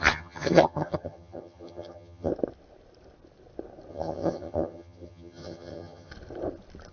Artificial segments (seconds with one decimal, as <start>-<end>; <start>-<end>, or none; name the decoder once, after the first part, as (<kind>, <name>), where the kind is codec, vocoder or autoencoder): 0.0-2.3 (vocoder, HiFi-GAN); 3.9-6.1